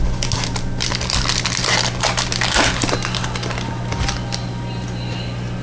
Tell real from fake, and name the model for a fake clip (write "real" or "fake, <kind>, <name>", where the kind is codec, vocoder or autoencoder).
real